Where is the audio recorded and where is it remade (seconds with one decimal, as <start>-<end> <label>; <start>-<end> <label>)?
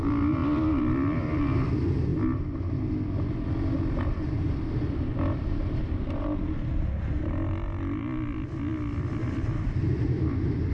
0.0-0.4 recorded; 0.4-1.7 remade; 1.7-8.7 recorded; 8.7-10.7 remade